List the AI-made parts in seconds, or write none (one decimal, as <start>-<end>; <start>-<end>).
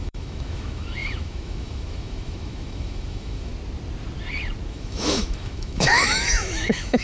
0.0-3.5; 4.7-7.0